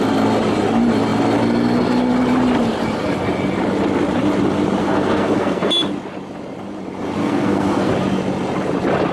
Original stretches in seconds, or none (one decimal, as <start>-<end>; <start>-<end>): 0.0-4.8; 5.7-7.2; 7.9-9.1